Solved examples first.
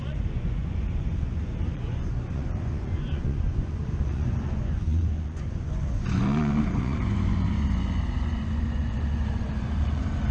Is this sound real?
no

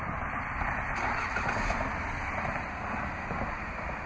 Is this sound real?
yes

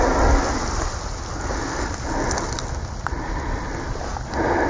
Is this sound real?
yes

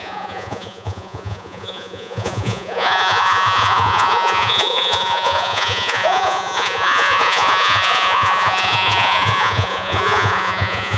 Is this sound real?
no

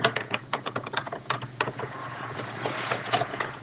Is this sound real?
no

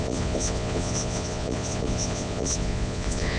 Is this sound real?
no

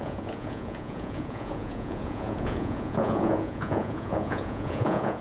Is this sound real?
no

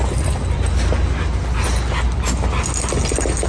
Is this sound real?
yes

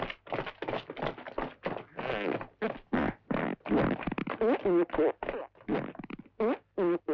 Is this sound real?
yes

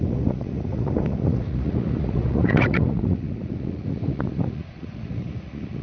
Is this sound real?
no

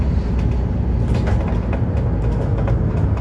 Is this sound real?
yes